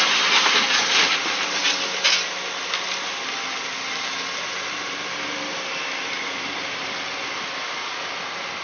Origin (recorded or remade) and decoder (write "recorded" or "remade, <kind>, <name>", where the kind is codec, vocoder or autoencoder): recorded